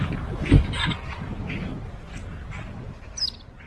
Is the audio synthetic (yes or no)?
no